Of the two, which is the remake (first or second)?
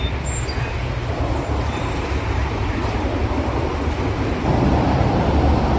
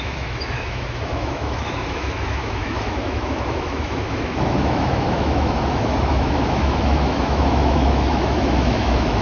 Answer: second